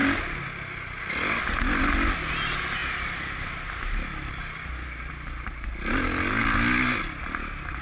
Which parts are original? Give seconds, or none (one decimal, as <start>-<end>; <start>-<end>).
0.0-7.8